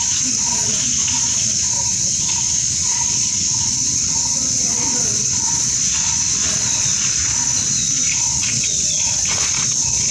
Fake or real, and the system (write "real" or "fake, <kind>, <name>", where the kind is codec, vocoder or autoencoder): fake, vocoder, Vocos